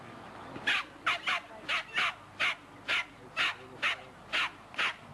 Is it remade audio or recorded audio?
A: recorded